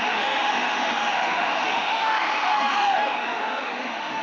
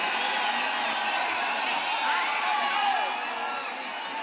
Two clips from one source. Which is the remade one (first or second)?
first